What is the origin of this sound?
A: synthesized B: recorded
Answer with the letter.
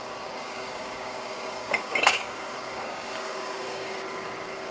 A